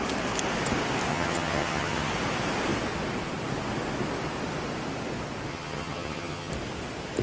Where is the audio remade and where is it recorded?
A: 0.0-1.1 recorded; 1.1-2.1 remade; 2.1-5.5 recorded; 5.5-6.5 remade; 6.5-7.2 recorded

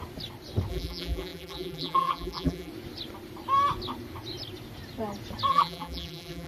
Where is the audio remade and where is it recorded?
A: 0.0-0.7 recorded; 0.7-2.7 remade; 2.7-5.5 recorded; 5.5-6.5 remade

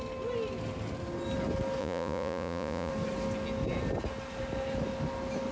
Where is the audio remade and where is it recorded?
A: 0.0-1.8 recorded; 1.8-2.9 remade; 2.9-5.5 recorded

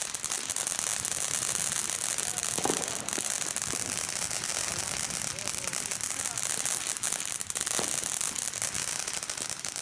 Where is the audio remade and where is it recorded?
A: 0.0-9.8 recorded

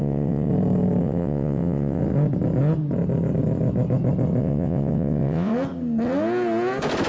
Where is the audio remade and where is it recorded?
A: 0.0-0.5 remade; 0.5-1.0 recorded; 1.0-2.0 remade; 2.0-4.4 recorded; 4.4-5.5 remade; 5.5-7.1 recorded